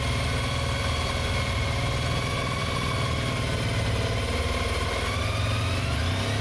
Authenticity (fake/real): real